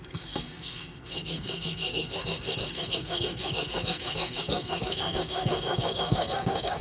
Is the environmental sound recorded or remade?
remade